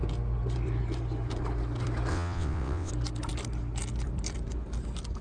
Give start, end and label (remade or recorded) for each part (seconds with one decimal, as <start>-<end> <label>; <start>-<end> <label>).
0.0-2.1 recorded; 2.1-2.9 remade; 2.9-5.2 recorded